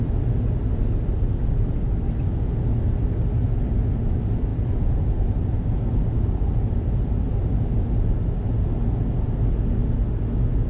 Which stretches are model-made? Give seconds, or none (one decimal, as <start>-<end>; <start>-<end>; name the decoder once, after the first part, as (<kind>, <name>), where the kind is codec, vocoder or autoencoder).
none